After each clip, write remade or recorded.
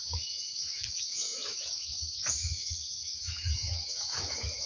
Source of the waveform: remade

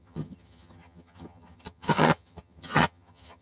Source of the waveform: remade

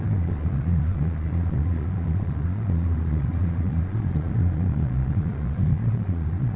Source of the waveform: remade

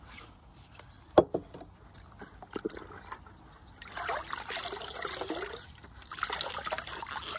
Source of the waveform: recorded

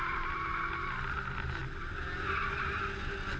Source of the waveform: recorded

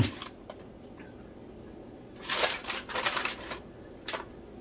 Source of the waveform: recorded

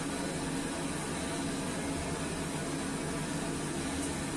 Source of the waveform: recorded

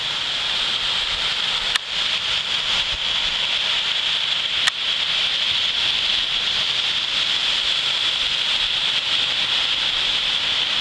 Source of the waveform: recorded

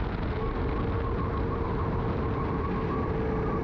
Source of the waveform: recorded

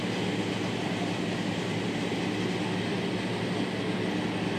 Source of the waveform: recorded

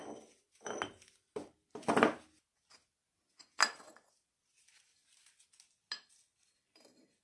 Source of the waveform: recorded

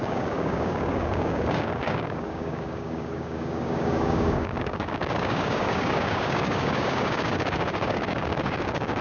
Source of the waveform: remade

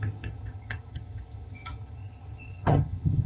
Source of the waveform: remade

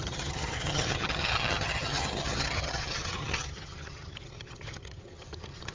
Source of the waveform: remade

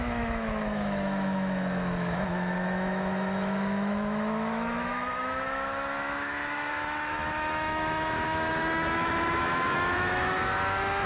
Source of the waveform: remade